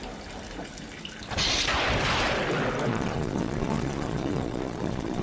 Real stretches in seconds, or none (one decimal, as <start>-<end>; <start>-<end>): 0.0-2.9